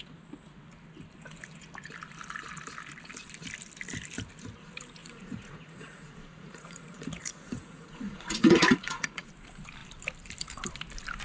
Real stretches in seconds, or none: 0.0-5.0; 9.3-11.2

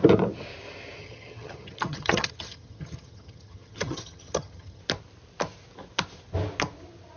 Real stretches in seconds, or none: 0.0-1.0; 4.8-7.2

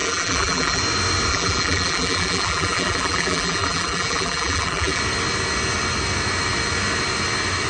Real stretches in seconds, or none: 0.8-1.3; 5.0-7.7

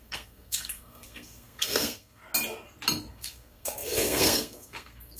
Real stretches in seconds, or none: 2.2-3.1

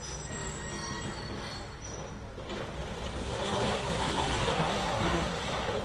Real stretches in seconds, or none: 0.0-3.2

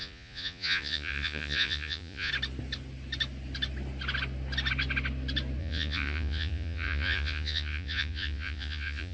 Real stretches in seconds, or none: 2.3-5.6